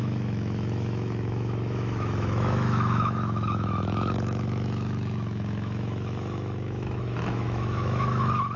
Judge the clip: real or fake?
fake